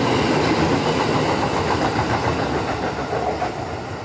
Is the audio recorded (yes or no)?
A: yes